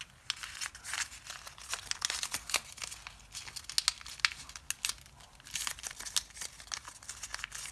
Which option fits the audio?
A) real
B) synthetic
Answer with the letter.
A